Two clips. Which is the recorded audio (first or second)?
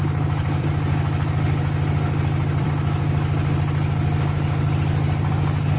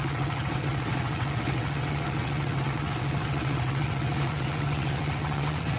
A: first